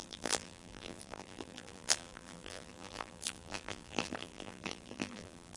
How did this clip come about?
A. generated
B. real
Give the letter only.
A